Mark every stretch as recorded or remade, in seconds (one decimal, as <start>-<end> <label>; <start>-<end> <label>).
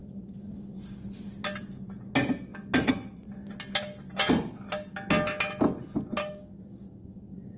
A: 0.0-1.0 remade; 1.0-6.2 recorded; 6.2-7.6 remade